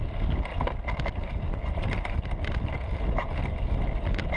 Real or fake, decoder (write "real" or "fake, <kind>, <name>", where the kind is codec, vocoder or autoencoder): real